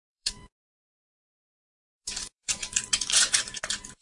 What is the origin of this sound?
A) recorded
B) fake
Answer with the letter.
B